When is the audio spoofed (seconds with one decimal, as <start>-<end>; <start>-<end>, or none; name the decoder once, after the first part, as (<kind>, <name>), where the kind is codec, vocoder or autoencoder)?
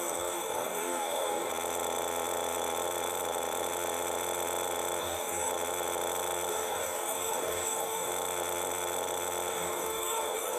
0.0-1.5 (codec, DAC); 5.0-5.5; 6.5-8.1; 9.5-10.6